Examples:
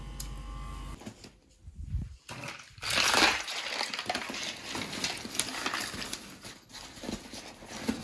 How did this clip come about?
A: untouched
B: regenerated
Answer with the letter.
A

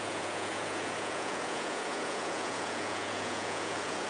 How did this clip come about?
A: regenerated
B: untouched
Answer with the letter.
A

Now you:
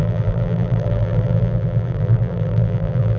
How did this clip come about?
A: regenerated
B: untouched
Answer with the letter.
A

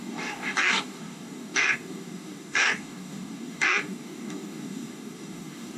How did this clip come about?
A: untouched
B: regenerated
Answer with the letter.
B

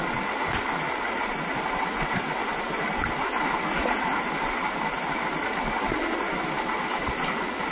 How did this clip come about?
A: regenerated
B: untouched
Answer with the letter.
B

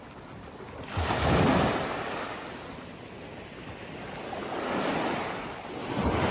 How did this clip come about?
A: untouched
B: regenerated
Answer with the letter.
A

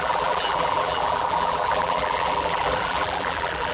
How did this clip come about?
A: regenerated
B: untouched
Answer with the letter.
A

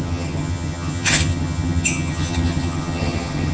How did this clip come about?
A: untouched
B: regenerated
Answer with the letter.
B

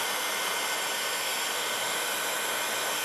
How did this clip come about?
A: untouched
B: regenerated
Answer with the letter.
A